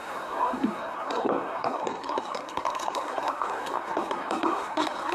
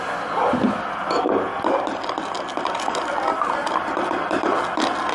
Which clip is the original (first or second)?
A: second